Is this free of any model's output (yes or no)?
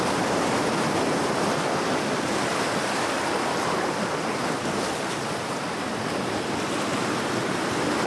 yes